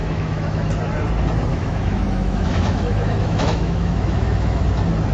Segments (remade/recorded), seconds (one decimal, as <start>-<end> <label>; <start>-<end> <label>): 0.0-0.7 remade; 0.7-1.5 recorded; 1.5-4.6 remade; 4.6-5.1 recorded